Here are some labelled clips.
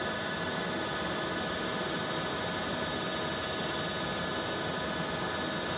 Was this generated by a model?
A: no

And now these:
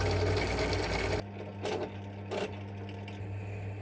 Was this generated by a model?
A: no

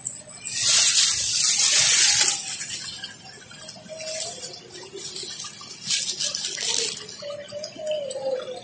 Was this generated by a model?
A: no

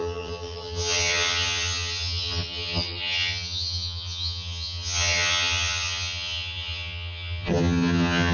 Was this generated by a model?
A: yes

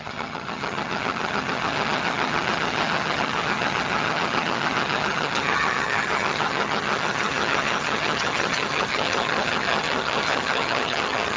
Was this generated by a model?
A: yes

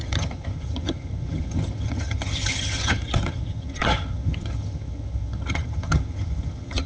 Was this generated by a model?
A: yes